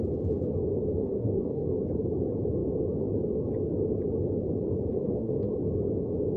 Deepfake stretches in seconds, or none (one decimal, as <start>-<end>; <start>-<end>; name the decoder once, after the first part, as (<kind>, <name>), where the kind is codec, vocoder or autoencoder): 1.0-1.7 (codec, DAC); 4.9-5.5